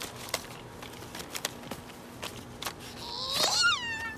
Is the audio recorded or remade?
recorded